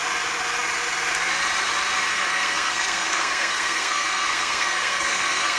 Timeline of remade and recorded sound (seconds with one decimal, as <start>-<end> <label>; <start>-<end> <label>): 0.0-2.1 recorded; 2.1-5.6 remade